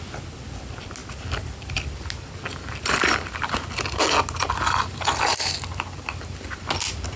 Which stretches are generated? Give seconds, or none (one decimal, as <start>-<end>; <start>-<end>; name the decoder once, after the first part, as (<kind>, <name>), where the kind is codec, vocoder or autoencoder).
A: none